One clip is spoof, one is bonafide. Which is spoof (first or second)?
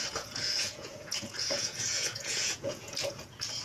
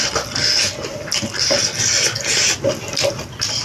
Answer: first